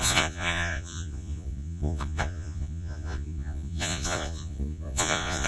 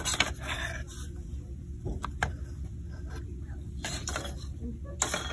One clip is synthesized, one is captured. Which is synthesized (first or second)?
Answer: first